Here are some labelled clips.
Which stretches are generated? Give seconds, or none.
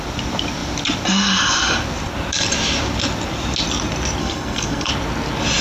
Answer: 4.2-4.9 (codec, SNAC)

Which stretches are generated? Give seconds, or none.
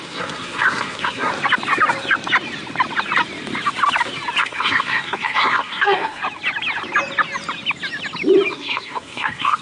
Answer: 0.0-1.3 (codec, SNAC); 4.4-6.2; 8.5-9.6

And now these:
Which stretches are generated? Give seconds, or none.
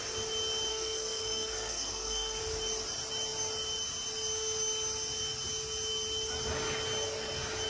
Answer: 0.7-2.4 (codec, SNAC)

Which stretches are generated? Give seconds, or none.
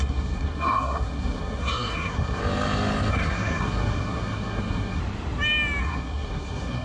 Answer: 0.0-2.4 (codec, SNAC); 3.1-5.0; 5.8-6.8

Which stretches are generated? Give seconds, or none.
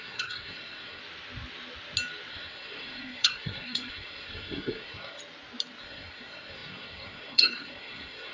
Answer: 0.0-1.0 (codec, SNAC); 2.3-5.2; 5.8-8.3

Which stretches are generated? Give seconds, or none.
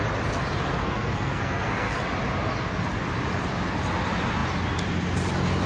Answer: 0.7-2.0 (codec, SNAC)